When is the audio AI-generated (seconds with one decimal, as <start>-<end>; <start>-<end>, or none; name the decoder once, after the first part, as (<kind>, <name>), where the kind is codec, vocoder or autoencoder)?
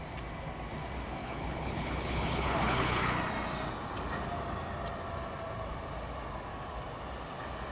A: 1.2-3.2 (codec, HILCodec)